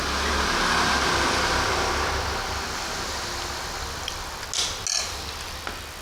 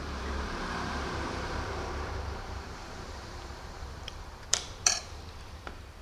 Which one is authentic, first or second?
first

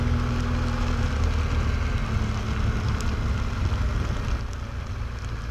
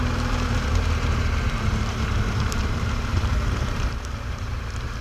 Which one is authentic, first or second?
first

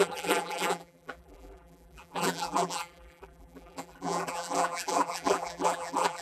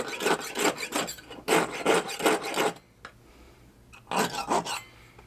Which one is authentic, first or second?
second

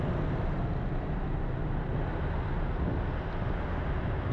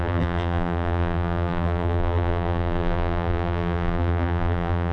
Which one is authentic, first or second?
first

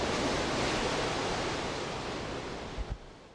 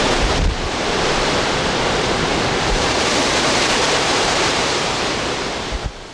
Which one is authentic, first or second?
first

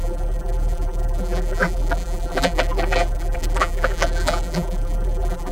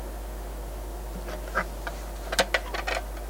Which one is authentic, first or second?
second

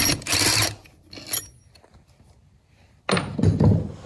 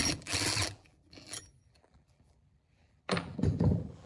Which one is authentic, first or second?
first